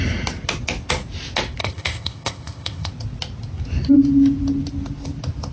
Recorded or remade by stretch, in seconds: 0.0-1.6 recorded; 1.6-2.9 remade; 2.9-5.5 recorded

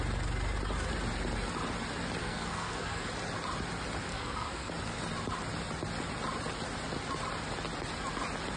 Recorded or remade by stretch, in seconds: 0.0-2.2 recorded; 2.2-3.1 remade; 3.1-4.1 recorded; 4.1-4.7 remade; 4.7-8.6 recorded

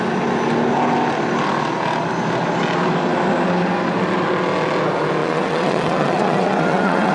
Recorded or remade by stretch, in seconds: 0.0-5.2 recorded; 5.2-7.1 remade

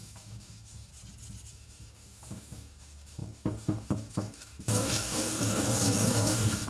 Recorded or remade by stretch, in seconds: 0.0-0.9 remade; 0.9-1.5 recorded; 1.5-6.7 remade